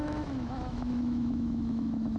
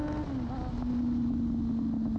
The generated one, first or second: first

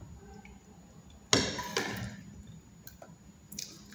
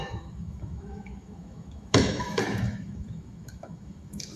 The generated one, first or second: second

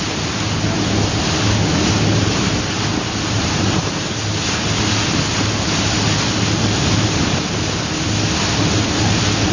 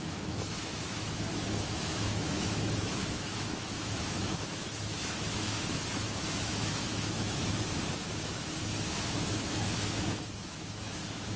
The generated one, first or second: second